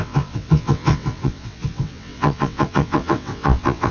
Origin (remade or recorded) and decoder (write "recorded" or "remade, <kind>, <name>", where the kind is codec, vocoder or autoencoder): remade, vocoder, WaveNeXt